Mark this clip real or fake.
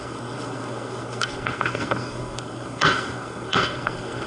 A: fake